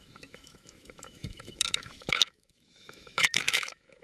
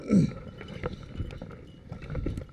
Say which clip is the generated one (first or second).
first